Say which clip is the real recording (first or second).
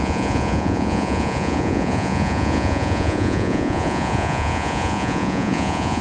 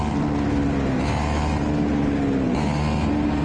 second